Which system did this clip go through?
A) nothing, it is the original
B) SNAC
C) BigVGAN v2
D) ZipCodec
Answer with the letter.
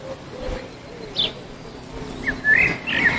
A